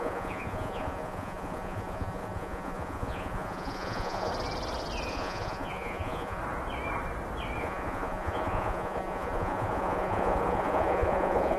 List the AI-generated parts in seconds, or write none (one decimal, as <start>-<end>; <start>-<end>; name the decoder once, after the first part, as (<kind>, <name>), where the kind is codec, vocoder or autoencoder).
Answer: 0.0-4.3 (vocoder, Vocos); 5.1-6.4; 7.6-11.6